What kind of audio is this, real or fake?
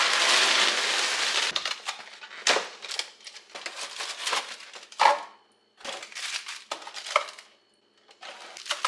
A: real